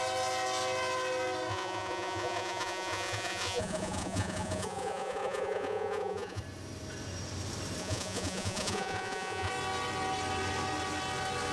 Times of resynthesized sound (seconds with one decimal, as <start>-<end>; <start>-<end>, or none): 1.5-6.4; 7.8-9.5